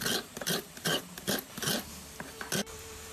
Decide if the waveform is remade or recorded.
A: recorded